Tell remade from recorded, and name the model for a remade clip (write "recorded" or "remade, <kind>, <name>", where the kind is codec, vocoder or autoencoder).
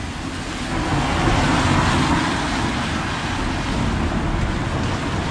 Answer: recorded